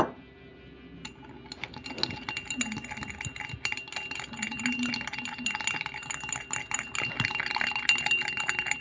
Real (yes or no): yes